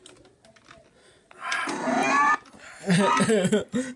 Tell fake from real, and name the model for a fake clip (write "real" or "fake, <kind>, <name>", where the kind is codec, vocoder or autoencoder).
real